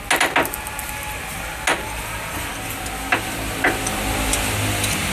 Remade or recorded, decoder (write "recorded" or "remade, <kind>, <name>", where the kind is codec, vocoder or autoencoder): recorded